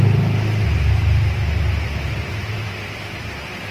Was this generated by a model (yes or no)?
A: no